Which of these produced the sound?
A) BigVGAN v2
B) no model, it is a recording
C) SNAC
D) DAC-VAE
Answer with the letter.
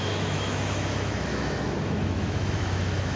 D